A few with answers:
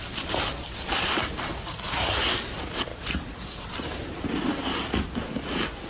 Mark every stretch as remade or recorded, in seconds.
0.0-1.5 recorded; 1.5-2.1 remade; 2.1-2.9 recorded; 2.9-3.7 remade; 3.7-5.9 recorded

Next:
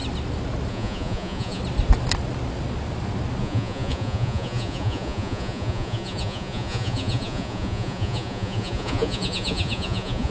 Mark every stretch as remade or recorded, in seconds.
0.0-0.7 recorded; 0.7-1.6 remade; 1.6-3.4 recorded; 3.4-10.3 remade

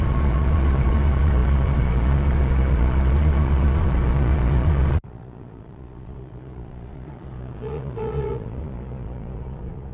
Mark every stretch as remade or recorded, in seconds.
0.0-9.9 remade